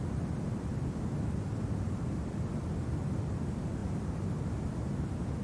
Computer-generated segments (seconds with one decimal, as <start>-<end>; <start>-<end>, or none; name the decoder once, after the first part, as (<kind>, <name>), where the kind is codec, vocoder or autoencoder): none